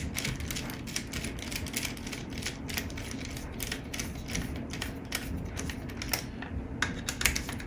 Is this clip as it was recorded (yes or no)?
yes